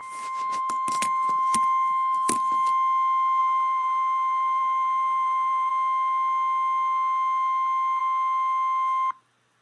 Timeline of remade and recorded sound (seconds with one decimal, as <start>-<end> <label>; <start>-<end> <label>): 0.0-3.4 recorded; 3.4-5.7 remade; 5.7-9.6 recorded

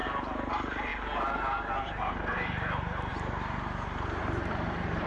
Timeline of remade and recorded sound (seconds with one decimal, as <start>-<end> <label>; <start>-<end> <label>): 0.0-0.5 recorded; 0.5-0.9 remade; 0.9-1.7 recorded; 1.7-5.1 remade

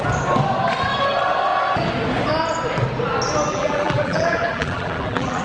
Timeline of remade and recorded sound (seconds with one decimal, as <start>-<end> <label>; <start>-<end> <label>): 0.0-3.5 recorded; 3.5-5.4 remade

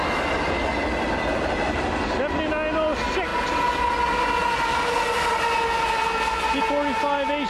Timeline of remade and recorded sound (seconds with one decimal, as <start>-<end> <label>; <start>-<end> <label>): 0.0-7.5 recorded

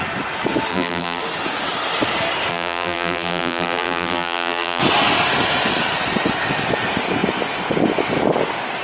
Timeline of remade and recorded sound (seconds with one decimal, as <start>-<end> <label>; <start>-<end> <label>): 0.0-0.7 recorded; 0.7-1.2 remade; 1.2-2.5 recorded; 2.5-4.8 remade; 4.8-8.8 recorded

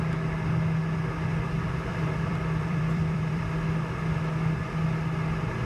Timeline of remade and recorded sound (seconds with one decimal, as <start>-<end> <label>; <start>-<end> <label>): 0.0-1.9 recorded; 1.9-3.4 remade; 3.4-5.7 recorded

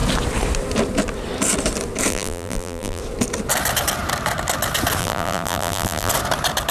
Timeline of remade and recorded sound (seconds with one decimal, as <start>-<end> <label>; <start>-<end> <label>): 0.0-2.1 recorded; 2.1-3.0 remade; 3.0-5.0 recorded; 5.0-6.1 remade; 6.1-6.7 recorded